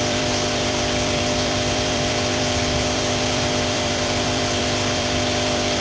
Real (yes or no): no